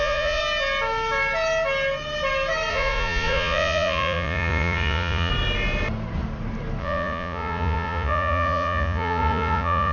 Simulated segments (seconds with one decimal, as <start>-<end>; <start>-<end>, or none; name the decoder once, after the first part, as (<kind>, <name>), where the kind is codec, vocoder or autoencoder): 0.0-0.4 (vocoder, Vocos); 2.7-5.3; 6.8-9.9